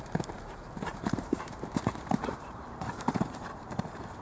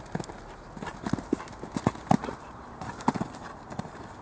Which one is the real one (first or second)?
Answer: second